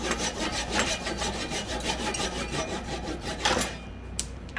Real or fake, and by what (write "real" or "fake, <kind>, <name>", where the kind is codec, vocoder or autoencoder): real